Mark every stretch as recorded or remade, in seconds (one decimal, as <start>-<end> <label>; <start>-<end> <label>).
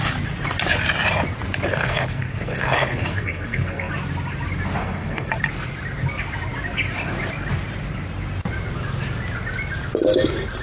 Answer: 0.0-1.7 recorded; 1.7-3.9 remade; 3.9-4.8 recorded; 4.8-5.3 remade; 5.3-10.6 recorded